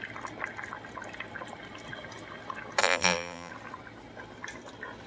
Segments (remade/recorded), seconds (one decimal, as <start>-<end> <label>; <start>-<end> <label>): 0.0-2.8 recorded; 2.8-3.5 remade; 3.5-5.1 recorded